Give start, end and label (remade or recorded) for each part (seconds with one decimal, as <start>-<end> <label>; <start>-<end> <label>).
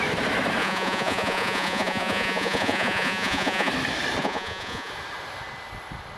0.0-0.6 recorded; 0.6-3.7 remade; 3.7-4.2 recorded; 4.2-4.9 remade; 4.9-6.2 recorded